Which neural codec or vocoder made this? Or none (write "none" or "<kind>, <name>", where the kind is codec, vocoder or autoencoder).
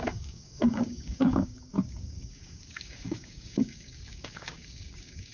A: codec, DAC